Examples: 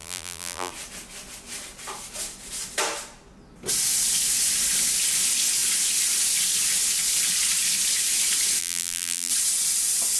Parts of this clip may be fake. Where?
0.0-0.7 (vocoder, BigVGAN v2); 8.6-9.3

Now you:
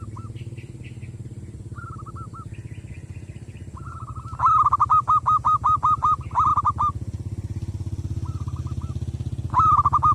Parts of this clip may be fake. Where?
none

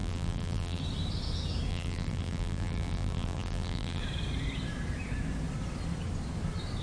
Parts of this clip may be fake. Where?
0.0-0.8 (vocoder, BigVGAN v2); 1.7-4.0

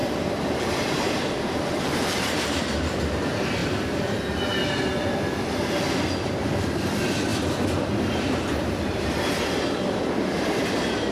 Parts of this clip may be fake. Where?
0.0-3.1 (vocoder, BigVGAN v2); 3.6-4.2

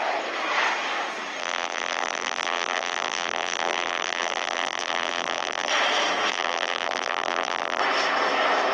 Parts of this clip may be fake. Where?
1.4-5.7 (vocoder, BigVGAN v2); 6.3-7.8

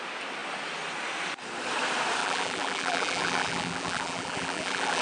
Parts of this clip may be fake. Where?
2.2-5.0 (vocoder, BigVGAN v2)

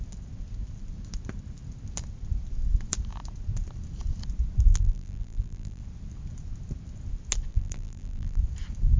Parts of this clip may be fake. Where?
4.7-5.8 (vocoder, BigVGAN v2); 7.5-8.4

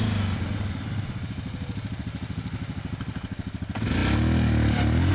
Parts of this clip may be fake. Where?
none